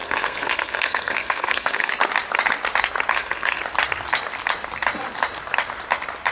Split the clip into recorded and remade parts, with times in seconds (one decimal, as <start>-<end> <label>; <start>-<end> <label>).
0.0-1.9 remade; 1.9-3.1 recorded; 3.1-3.6 remade; 3.6-6.3 recorded